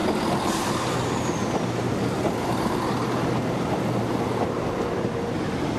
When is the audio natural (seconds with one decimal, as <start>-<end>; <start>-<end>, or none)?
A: 0.0-5.8